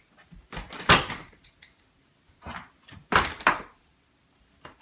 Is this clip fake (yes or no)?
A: no